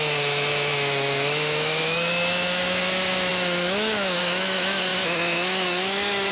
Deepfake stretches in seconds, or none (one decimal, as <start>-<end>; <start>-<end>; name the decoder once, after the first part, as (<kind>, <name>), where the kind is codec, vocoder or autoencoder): 0.0-6.3 (autoencoder, DAC-VAE)